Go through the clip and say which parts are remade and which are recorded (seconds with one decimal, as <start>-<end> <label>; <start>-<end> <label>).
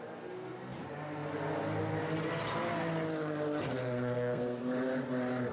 0.0-3.8 recorded; 3.8-4.6 remade; 4.6-5.5 recorded